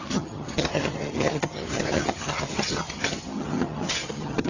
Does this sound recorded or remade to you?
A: remade